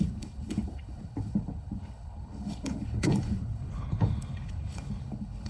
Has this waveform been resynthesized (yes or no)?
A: yes